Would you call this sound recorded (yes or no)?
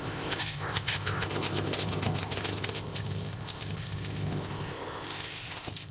no